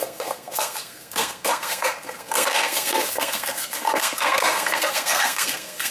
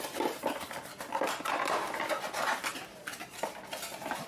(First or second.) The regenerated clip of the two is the first